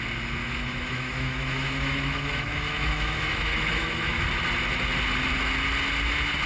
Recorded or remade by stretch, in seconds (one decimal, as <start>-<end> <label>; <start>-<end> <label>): 0.0-0.4 recorded; 0.4-4.2 remade; 4.2-6.5 recorded